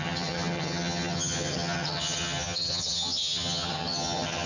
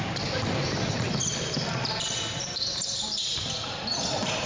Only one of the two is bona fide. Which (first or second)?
second